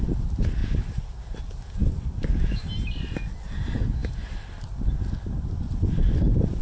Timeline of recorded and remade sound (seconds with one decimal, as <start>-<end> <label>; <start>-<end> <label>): 0.0-6.6 recorded